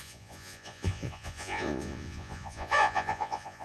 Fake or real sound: fake